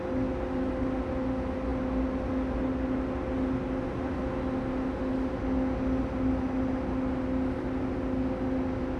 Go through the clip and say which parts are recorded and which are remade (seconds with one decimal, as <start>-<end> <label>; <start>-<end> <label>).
0.0-9.0 recorded